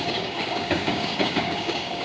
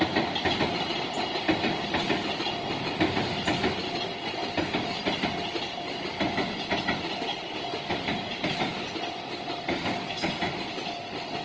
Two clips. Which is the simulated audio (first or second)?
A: first